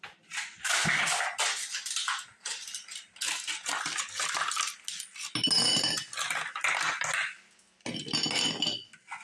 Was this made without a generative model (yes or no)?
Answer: yes